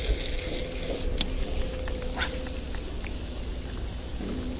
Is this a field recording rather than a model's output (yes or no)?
yes